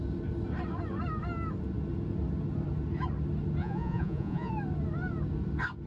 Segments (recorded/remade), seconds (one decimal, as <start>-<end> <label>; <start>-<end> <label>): 0.0-3.6 recorded; 3.6-4.5 remade; 4.5-5.9 recorded